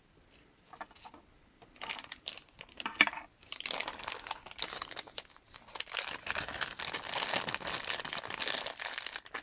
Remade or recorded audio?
recorded